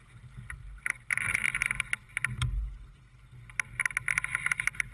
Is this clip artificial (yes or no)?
no